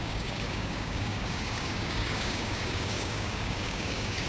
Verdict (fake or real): fake